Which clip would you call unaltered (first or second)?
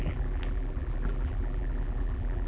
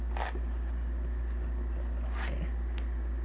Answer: second